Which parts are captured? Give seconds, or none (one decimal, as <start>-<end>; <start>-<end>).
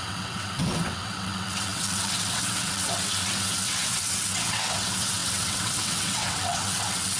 none